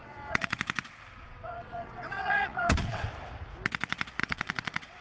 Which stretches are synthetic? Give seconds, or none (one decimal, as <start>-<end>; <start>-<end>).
0.0-0.6; 1.2-3.1; 4.2-5.0